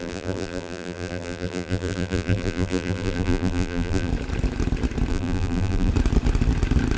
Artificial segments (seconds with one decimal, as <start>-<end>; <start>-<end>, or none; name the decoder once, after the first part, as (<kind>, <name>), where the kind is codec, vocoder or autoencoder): 0.0-4.1 (vocoder, BigVGAN v2); 5.1-5.9